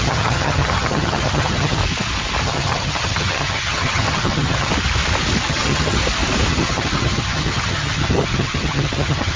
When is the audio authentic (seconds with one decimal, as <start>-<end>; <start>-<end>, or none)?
1.8-2.4; 4.7-5.5; 6.0-6.5